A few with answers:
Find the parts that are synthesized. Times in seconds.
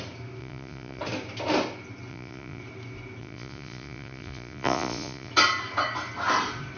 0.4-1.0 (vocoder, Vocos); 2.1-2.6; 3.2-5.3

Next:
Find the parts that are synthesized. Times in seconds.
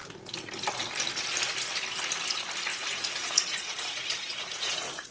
2.7-5.1 (vocoder, Vocos)